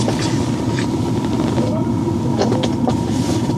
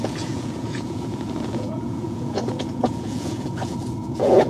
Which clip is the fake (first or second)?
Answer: second